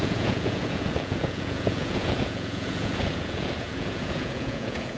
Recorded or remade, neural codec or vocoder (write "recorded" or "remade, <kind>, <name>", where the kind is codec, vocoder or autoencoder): remade, vocoder, Vocos